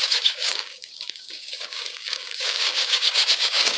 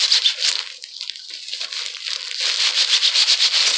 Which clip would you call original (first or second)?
second